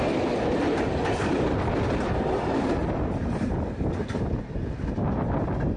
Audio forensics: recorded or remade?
recorded